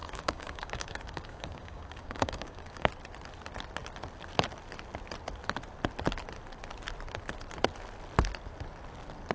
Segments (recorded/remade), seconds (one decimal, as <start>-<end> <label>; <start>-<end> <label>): 0.0-2.9 remade; 2.9-9.3 recorded